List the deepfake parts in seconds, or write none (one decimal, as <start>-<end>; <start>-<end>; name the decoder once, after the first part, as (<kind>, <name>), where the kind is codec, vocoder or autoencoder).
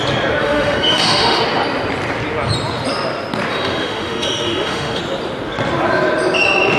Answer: 0.4-1.4 (autoencoder, DAC-VAE); 3.5-5.0